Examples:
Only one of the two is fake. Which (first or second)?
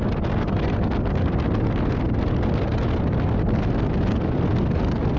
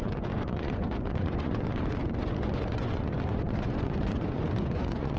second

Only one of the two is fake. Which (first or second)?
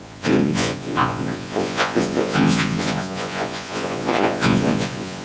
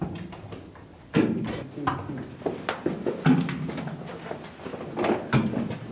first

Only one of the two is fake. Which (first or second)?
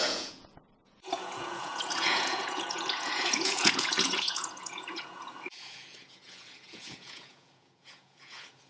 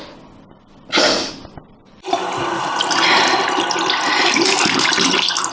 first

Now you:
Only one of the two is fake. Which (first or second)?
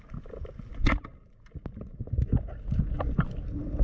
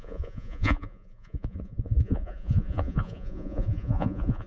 second